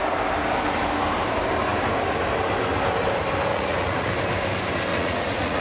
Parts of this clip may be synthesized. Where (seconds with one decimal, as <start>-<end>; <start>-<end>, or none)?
3.5-4.1; 4.9-5.6